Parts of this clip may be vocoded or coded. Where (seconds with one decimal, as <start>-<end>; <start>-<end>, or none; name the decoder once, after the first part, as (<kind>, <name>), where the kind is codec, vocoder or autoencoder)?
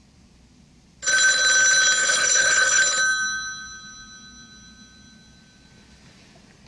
2.0-2.8 (codec, HILCodec)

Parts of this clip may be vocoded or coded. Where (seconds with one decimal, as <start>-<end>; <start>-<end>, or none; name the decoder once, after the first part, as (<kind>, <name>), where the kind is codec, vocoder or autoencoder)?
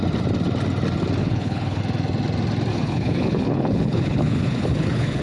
1.2-1.8 (codec, HILCodec); 2.7-5.2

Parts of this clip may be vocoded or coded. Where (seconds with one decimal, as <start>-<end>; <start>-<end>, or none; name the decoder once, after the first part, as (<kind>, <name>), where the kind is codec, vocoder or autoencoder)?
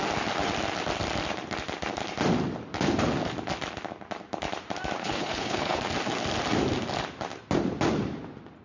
5.0-5.8 (codec, HILCodec)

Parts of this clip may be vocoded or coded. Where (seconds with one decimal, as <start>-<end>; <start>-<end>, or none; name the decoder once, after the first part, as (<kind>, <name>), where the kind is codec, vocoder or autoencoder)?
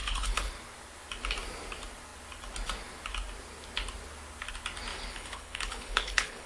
0.0-0.5 (codec, HILCodec); 4.9-6.5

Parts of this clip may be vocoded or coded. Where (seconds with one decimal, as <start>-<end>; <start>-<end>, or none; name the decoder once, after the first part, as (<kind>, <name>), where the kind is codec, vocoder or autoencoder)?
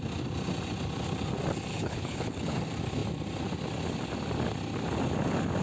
1.7-2.6 (codec, HILCodec)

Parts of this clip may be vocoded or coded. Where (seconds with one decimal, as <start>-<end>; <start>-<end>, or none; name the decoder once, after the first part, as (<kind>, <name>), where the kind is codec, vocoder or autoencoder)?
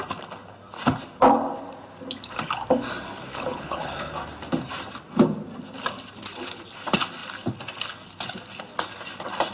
3.3-4.1 (codec, HILCodec)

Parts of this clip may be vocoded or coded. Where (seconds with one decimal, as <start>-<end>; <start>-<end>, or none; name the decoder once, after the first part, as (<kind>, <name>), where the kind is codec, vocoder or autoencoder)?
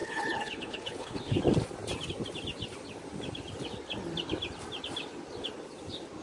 0.0-1.4 (codec, HILCodec)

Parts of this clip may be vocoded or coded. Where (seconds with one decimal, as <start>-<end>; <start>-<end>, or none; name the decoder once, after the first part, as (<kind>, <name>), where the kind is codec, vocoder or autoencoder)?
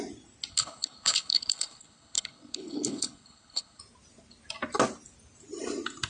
0.5-3.8 (codec, HILCodec)